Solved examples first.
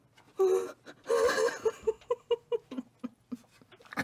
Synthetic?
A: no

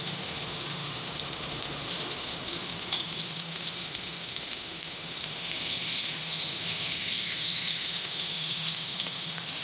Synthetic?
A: yes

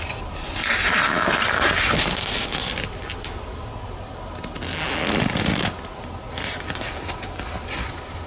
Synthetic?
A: no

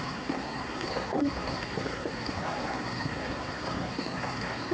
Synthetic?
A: yes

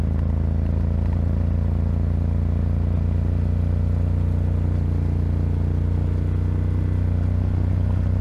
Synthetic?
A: no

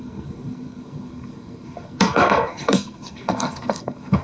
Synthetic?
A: yes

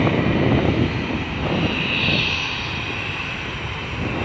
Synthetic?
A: no